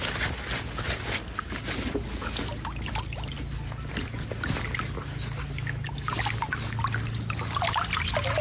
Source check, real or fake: real